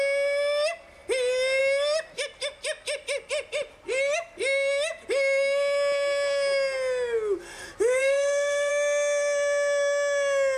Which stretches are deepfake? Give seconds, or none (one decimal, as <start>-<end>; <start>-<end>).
8.0-8.7

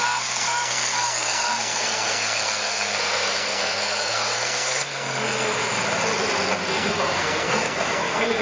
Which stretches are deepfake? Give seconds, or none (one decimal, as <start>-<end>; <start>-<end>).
0.0-5.6; 6.7-8.4